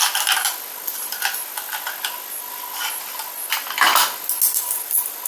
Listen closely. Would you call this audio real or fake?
real